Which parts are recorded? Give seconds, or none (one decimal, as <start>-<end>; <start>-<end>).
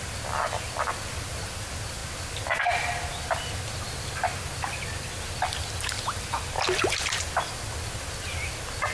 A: 0.0-8.9